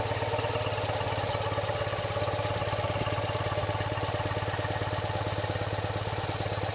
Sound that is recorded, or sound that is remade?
recorded